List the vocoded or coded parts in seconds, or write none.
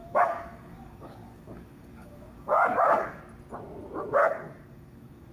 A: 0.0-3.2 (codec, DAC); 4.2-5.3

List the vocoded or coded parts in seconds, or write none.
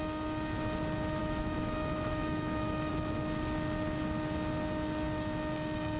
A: 1.2-2.9 (autoencoder, DAC-VAE)